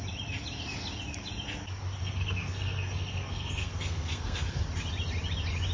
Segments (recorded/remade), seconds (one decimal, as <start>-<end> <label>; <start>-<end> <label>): 0.0-2.0 recorded; 2.0-4.6 remade; 4.6-5.7 recorded